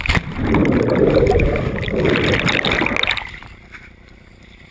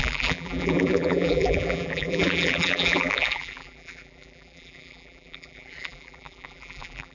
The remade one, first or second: second